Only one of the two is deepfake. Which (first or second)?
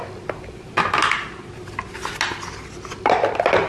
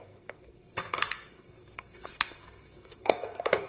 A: second